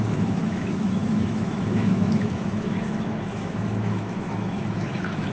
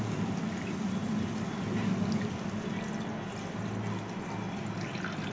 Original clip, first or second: second